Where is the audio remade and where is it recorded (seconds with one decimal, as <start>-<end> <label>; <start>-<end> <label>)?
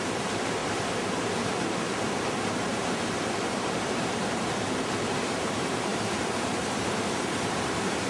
0.0-8.1 remade